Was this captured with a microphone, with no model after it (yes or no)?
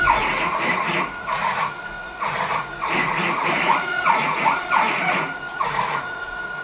no